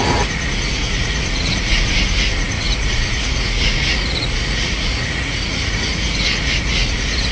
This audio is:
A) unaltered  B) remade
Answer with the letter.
B